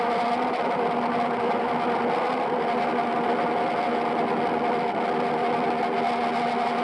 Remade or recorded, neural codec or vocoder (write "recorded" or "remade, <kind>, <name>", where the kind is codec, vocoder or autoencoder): recorded